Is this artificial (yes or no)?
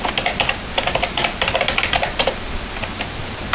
no